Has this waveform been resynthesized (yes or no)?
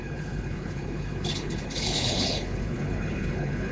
yes